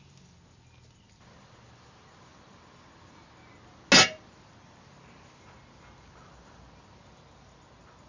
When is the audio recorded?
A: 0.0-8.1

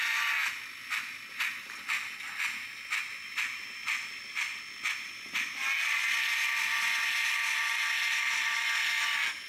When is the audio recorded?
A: 0.0-9.5

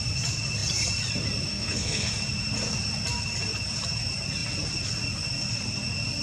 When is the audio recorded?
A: 0.0-1.5; 2.1-6.2

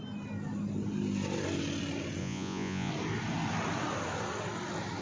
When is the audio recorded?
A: 0.0-2.2; 2.9-5.0

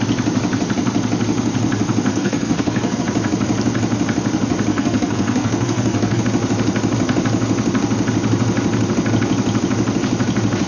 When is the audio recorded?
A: 0.0-2.1; 3.0-4.7; 6.2-10.7